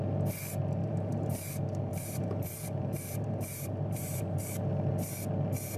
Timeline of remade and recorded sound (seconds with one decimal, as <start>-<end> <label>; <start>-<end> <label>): 0.0-0.8 recorded; 0.8-1.5 remade; 1.5-1.9 recorded; 1.9-4.4 remade; 4.4-5.8 recorded